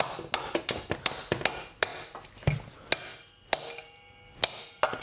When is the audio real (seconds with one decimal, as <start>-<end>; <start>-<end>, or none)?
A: 0.0-5.0